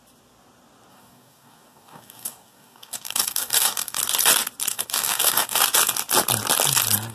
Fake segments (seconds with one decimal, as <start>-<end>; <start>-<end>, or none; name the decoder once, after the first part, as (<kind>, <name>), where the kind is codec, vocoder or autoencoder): 0.9-4.0 (codec, DAC); 4.7-5.6